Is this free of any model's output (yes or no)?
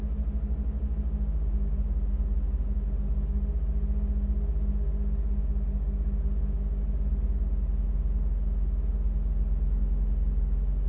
yes